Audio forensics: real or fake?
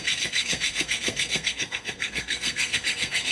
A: fake